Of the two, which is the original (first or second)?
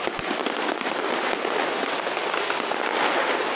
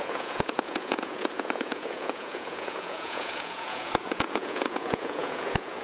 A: first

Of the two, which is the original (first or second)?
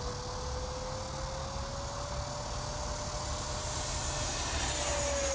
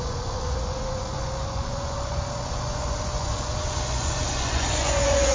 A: first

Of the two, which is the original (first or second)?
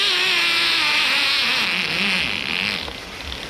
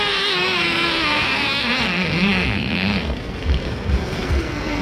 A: first